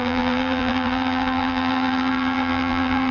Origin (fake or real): fake